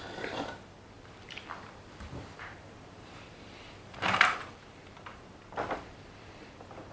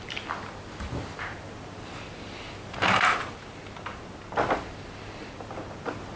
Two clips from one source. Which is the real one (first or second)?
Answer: second